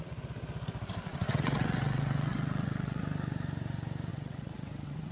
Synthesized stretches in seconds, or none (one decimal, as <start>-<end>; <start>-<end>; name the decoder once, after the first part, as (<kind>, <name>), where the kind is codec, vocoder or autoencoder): 1.1-3.0 (vocoder, WaveNeXt); 4.1-5.1